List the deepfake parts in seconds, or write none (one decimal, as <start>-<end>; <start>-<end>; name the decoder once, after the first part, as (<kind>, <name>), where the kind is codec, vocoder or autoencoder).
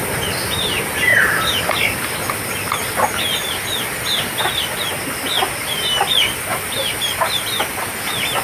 none